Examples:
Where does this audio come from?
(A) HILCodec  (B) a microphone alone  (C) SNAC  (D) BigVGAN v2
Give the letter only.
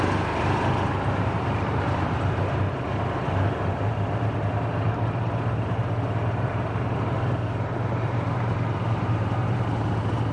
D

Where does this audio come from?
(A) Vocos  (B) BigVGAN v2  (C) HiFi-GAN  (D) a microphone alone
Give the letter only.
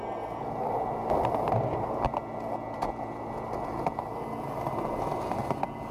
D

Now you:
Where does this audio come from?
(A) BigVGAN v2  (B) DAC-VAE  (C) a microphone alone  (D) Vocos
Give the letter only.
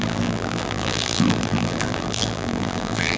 A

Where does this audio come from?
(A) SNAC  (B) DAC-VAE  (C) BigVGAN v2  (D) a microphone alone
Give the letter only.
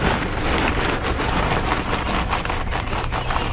D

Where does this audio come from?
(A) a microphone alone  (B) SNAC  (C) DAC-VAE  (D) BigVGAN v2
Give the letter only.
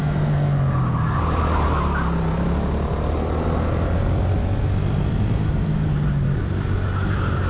A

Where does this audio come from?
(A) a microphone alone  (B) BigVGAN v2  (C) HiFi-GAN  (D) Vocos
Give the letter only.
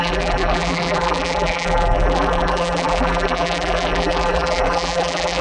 B